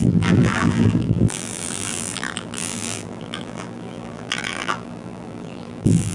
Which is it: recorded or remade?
remade